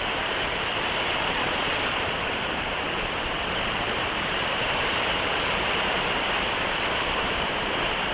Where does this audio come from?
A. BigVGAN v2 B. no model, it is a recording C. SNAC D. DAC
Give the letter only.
A